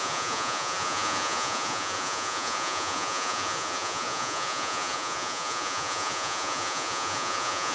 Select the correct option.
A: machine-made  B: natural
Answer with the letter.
A